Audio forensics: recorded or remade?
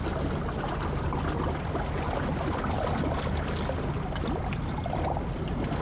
recorded